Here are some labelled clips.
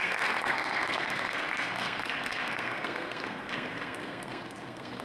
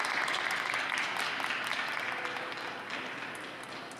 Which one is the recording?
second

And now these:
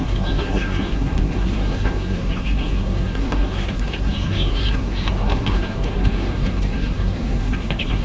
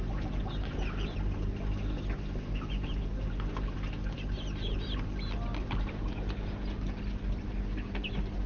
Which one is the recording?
second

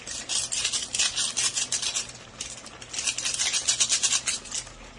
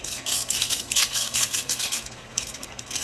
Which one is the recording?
first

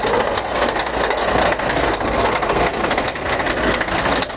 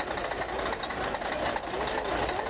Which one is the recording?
second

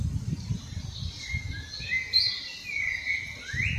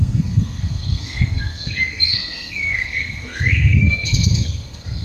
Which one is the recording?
first